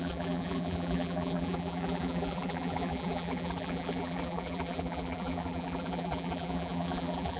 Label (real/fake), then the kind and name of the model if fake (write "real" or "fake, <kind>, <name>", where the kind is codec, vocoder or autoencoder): fake, vocoder, BigVGAN v2